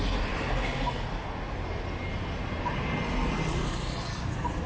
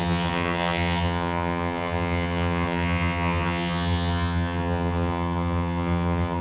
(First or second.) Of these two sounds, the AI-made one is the second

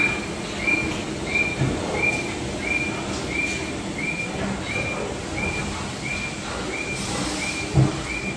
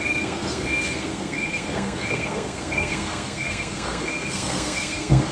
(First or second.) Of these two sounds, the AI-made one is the second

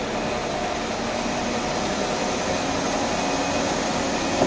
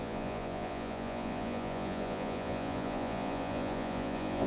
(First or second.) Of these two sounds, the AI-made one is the second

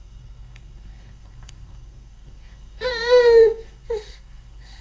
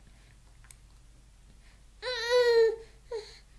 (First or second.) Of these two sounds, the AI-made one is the first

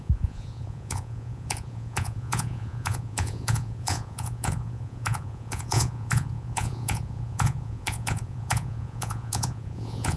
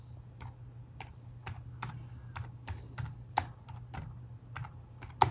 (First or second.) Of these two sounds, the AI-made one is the first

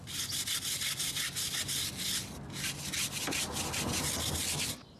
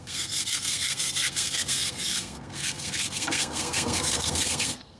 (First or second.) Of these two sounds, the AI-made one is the second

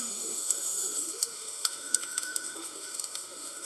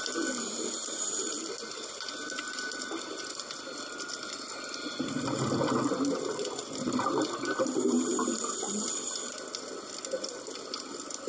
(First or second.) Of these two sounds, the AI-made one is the first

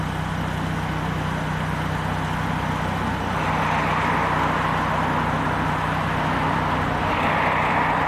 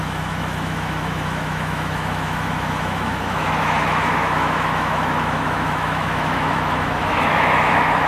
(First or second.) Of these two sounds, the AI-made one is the second